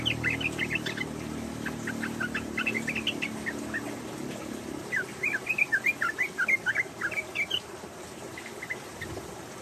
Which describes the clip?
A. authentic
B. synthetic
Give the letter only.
A